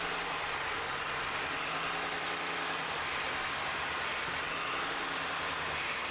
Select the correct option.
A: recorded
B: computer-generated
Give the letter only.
A